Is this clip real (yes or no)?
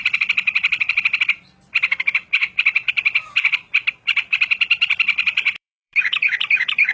no